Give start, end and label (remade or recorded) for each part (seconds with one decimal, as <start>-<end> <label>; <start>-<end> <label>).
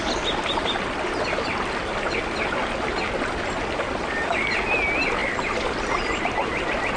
0.0-7.0 recorded